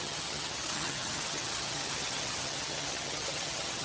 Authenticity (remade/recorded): remade